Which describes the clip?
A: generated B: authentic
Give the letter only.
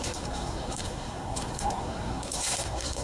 A